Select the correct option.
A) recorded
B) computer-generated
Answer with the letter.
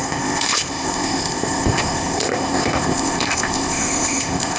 B